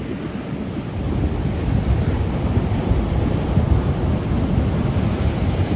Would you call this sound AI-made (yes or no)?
no